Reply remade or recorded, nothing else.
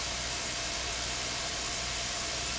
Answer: remade